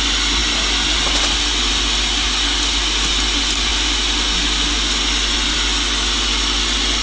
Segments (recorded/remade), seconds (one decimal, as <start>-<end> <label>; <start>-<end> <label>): 0.0-7.0 recorded